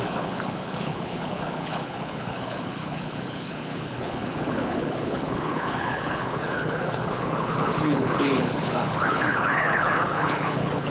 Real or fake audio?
fake